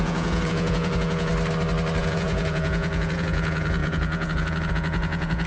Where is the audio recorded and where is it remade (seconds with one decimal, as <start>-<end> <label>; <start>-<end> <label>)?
0.0-1.3 remade; 1.3-2.0 recorded; 2.0-5.5 remade